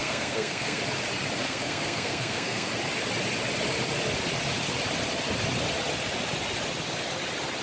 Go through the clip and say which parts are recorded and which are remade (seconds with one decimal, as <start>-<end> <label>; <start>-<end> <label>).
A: 0.0-0.8 remade; 0.8-1.4 recorded; 1.4-2.7 remade; 2.7-7.6 recorded